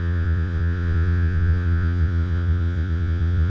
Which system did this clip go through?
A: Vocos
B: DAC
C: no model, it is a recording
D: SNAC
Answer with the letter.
A